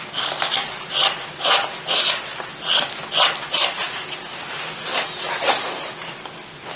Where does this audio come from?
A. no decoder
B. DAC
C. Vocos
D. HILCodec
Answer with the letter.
A